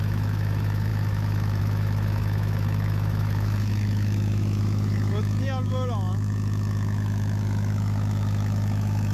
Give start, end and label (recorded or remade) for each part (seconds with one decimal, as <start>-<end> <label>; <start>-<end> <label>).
0.0-9.1 remade